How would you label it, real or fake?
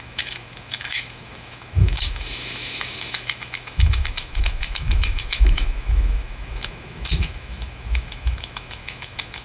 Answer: fake